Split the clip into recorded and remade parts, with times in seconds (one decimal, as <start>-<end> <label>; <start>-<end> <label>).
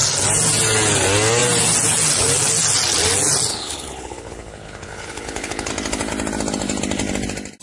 0.0-3.5 recorded; 3.5-5.7 remade; 5.7-7.6 recorded